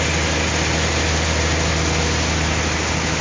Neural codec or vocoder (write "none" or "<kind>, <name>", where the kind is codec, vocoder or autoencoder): none